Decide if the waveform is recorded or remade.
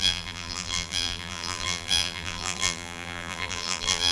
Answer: remade